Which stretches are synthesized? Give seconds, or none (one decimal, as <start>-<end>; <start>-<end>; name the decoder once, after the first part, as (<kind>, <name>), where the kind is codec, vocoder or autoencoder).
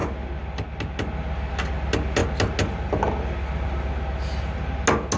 none